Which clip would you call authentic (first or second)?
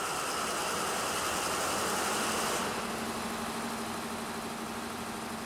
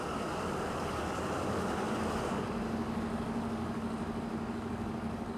first